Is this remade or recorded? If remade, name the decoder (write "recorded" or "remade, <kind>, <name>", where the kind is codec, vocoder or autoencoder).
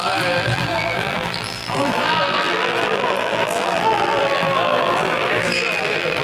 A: remade, vocoder, BigVGAN v2